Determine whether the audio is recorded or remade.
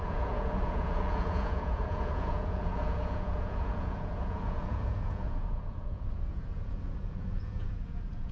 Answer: remade